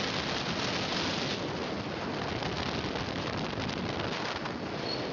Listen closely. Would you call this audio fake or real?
real